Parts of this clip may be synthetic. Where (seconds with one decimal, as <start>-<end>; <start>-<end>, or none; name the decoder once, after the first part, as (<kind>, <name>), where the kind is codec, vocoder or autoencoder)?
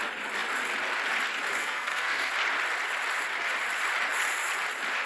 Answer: 1.6-2.3 (codec, SNAC)